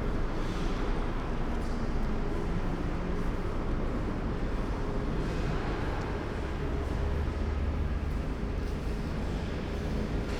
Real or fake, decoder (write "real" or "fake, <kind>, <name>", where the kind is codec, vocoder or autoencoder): real